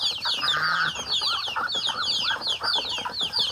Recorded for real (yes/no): yes